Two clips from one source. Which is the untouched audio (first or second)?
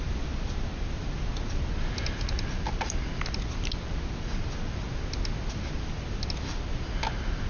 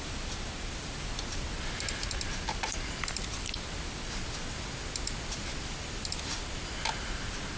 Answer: first